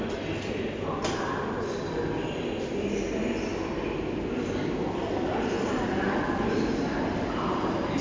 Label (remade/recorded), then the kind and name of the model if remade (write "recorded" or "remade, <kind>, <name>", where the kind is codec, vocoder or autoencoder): recorded